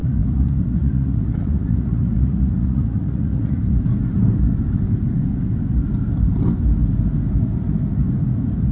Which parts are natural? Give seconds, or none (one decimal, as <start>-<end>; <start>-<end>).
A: 3.6-8.7